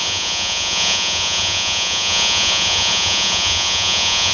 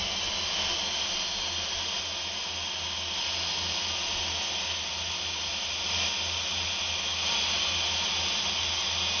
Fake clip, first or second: first